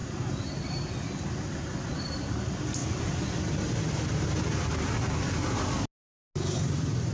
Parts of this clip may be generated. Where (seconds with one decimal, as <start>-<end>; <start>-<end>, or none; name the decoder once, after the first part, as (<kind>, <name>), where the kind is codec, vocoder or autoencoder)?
2.8-5.8 (vocoder, BigVGAN v2)